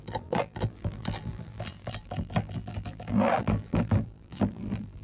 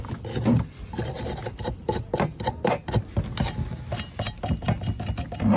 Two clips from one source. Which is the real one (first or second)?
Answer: second